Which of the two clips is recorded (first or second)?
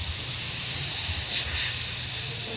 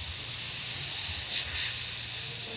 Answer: second